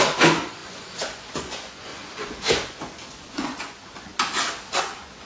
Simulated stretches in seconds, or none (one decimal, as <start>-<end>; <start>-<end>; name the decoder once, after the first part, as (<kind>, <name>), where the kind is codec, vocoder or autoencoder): 0.0-4.1 (vocoder, Vocos); 4.8-5.3